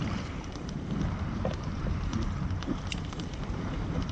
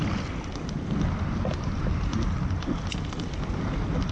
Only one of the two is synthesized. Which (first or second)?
first